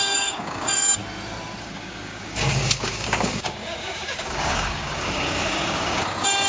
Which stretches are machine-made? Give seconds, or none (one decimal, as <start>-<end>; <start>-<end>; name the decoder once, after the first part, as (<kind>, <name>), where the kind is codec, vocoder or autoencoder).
0.0-1.0 (codec, DAC); 1.6-6.5